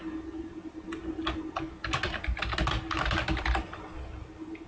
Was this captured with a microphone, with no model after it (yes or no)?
yes